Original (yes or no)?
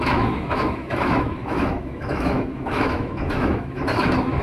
no